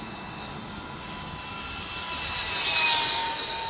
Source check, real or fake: real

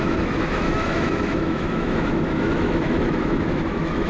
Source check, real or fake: fake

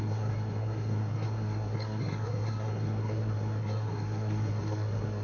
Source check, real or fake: fake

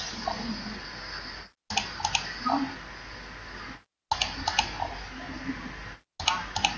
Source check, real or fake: real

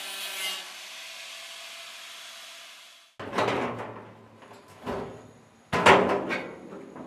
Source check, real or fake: real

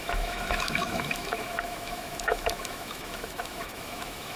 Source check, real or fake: fake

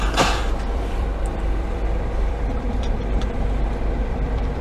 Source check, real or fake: fake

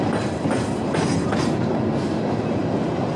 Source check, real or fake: real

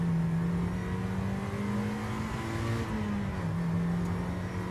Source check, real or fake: real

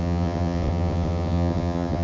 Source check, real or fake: fake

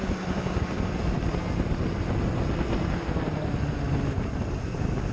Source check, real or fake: real